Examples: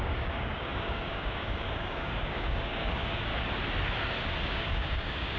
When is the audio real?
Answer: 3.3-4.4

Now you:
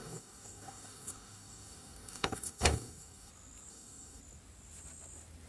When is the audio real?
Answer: 3.3-3.7; 4.2-5.5